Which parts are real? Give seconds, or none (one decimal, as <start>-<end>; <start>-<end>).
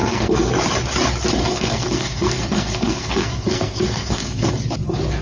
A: 0.5-1.4; 4.5-5.2